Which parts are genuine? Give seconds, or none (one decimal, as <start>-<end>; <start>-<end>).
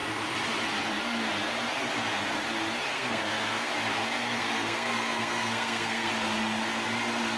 0.0-2.9; 3.7-4.2; 6.1-7.4